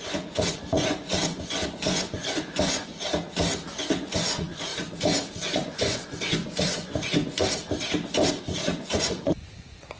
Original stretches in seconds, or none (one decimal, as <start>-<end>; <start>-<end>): 2.9-3.8; 4.7-5.3; 7.4-8.3